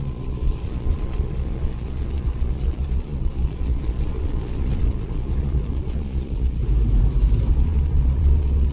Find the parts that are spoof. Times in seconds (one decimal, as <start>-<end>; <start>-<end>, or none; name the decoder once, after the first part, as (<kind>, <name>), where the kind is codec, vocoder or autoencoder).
0.0-6.6 (vocoder, Vocos); 7.5-8.7